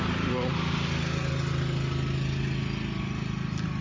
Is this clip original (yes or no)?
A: yes